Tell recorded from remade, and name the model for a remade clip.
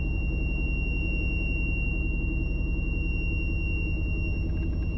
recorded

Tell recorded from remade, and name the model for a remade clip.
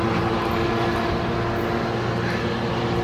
recorded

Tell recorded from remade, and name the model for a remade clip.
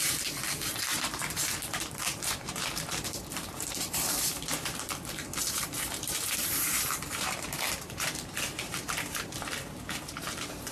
remade, vocoder, BigVGAN v2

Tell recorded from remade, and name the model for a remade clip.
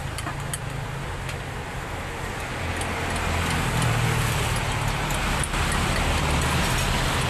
recorded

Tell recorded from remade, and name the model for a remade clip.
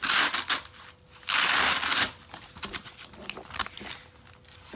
recorded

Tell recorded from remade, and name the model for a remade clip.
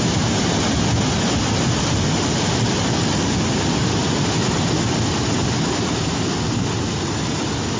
recorded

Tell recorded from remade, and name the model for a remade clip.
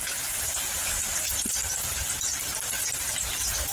remade, vocoder, BigVGAN v2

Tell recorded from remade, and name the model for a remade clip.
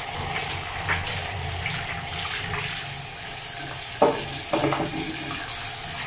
recorded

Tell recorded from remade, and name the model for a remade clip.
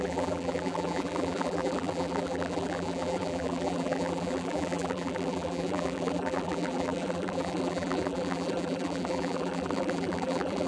remade, vocoder, BigVGAN v2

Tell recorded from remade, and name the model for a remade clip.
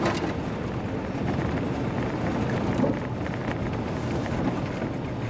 recorded